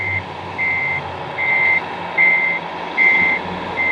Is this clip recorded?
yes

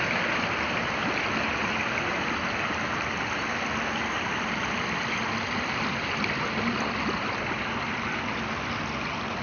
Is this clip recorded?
yes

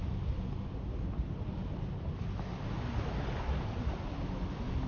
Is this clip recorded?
yes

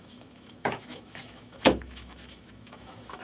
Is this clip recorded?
no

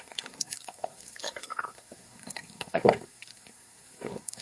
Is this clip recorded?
no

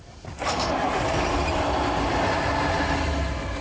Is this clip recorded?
yes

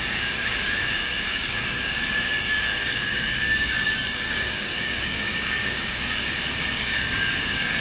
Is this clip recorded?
no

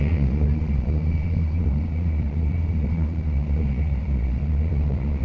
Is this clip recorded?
no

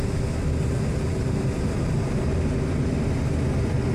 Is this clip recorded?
yes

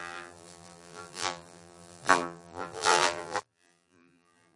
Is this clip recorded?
no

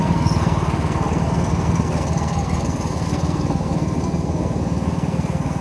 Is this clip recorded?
no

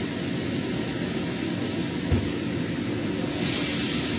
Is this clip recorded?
yes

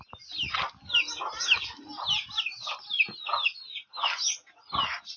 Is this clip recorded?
yes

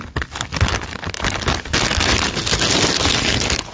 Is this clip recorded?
yes